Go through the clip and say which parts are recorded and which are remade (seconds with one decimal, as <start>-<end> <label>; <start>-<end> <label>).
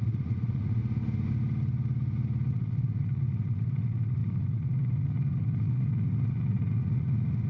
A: 0.0-0.8 remade; 0.8-2.5 recorded; 2.5-7.5 remade